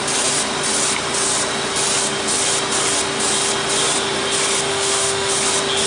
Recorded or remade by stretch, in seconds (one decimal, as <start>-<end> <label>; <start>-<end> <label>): 0.0-4.7 recorded; 4.7-5.3 remade; 5.3-5.9 recorded